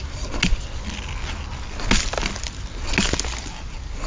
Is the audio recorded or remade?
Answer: recorded